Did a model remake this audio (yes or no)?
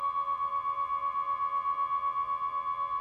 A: no